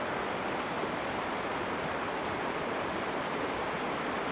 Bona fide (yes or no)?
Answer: yes